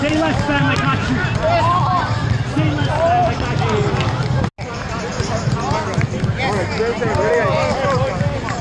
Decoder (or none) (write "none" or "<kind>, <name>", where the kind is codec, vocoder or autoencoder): none